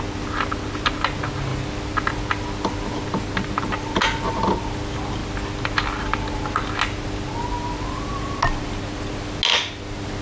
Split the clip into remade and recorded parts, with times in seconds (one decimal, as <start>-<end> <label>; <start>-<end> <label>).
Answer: 0.0-10.2 recorded